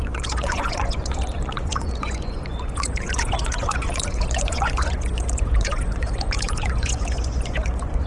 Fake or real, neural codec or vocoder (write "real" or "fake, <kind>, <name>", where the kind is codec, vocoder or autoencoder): fake, vocoder, Vocos